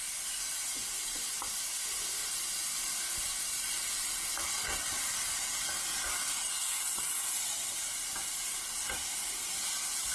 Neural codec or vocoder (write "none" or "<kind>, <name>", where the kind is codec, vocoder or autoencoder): none